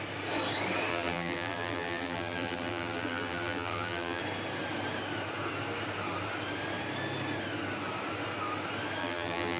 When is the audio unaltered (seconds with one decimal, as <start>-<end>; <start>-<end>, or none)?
0.0-0.9; 4.2-9.0